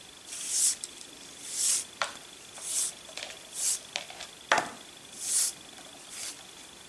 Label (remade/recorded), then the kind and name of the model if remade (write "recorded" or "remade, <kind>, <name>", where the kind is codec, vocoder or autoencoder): recorded